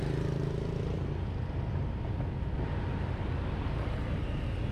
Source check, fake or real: real